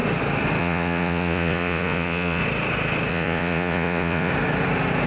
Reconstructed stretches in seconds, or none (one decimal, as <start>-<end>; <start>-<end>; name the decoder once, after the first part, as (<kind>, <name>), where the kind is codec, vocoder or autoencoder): 0.6-2.4 (vocoder, Vocos); 3.1-4.3